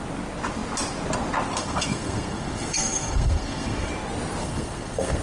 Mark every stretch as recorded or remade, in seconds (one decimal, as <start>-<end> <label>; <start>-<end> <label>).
0.0-1.6 recorded; 1.6-3.9 remade; 3.9-4.4 recorded; 4.4-5.2 remade